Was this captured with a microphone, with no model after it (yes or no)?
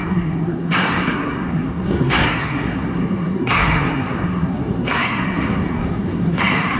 no